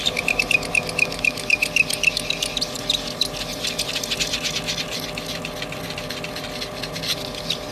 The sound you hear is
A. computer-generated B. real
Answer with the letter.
B